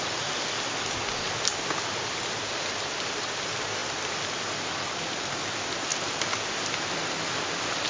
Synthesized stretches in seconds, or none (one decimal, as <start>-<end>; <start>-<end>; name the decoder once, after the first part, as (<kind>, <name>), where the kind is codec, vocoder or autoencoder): 3.8-4.4 (vocoder, BigVGAN v2); 5.9-6.7